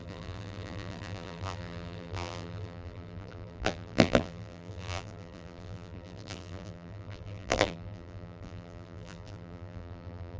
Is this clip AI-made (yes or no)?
yes